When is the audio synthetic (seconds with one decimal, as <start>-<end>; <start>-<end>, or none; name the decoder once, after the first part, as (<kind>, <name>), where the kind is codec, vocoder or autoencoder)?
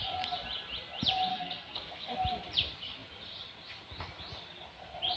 1.3-2.1 (codec, SNAC)